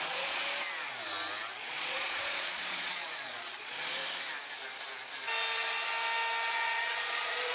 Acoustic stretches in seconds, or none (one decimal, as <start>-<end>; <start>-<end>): 0.4-1.6; 4.0-6.5